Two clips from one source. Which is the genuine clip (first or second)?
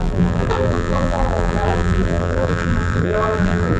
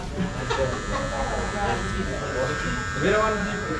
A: second